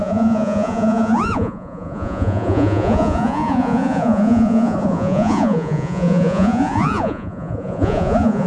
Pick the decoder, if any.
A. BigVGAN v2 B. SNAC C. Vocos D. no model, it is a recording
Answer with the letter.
C